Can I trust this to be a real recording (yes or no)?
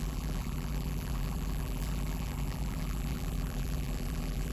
no